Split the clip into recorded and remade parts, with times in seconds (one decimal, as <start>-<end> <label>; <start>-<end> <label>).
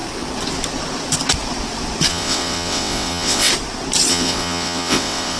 0.0-2.1 recorded; 2.1-3.5 remade; 3.5-4.1 recorded; 4.1-5.4 remade